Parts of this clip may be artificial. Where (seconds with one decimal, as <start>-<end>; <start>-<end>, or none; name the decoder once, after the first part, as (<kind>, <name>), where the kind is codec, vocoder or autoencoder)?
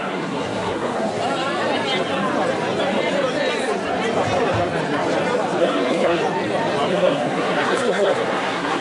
0.0-1.1 (codec, SNAC); 5.6-6.2; 6.9-8.8